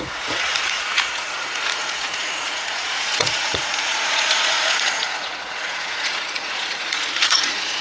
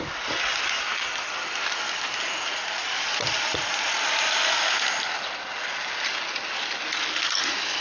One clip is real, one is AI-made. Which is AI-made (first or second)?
first